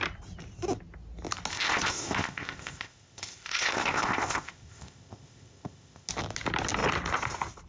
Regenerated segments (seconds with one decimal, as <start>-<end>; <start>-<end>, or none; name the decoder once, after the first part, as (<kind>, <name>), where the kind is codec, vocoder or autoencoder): 1.5-6.1 (codec, ZipCodec)